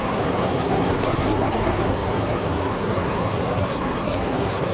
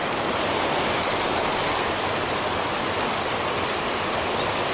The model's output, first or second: first